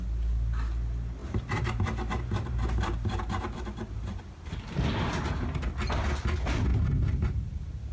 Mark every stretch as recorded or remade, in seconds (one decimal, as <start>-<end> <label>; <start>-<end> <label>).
0.0-1.2 recorded; 1.2-4.2 remade; 4.2-6.7 recorded; 6.7-7.4 remade; 7.4-7.9 recorded